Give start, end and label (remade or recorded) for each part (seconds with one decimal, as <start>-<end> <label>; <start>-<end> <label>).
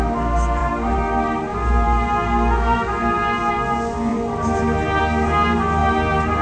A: 0.0-0.6 recorded; 0.6-3.5 remade; 3.5-4.1 recorded; 4.1-5.0 remade; 5.0-5.8 recorded; 5.8-6.4 remade